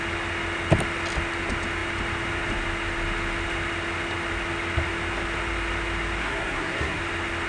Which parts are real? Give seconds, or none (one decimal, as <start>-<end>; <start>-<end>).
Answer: 0.0-6.2; 7.0-7.5